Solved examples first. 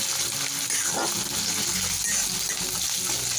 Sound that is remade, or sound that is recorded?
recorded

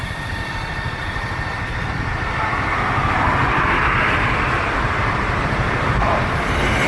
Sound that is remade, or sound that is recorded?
remade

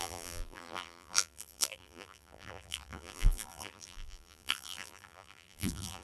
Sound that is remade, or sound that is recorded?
remade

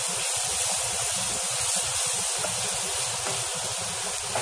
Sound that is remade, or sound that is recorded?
recorded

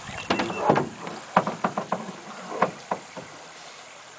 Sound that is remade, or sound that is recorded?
recorded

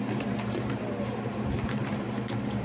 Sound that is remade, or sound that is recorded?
remade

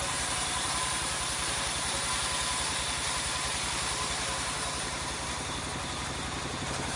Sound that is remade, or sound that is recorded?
remade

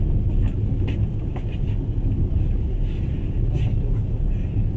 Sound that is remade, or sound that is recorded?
recorded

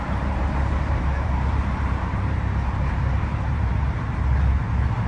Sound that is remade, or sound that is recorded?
remade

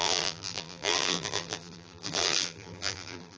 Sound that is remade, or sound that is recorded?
remade